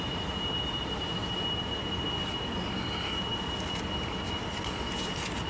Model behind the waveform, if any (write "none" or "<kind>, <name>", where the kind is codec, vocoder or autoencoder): none